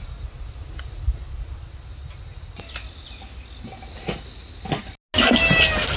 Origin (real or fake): real